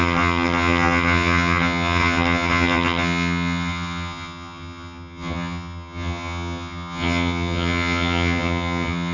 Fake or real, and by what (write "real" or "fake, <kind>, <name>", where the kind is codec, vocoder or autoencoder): fake, vocoder, HiFi-GAN